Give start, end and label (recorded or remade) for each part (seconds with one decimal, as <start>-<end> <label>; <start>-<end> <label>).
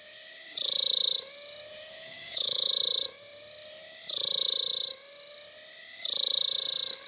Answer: 0.0-1.7 recorded; 1.7-2.7 remade; 2.7-7.1 recorded